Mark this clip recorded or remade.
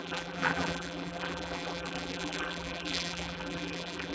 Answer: remade